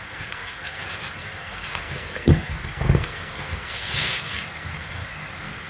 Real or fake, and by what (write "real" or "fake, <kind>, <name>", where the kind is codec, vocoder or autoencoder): fake, codec, SNAC